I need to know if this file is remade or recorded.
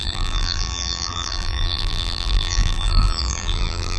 remade